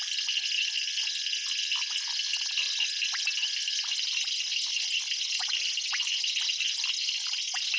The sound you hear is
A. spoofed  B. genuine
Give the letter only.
B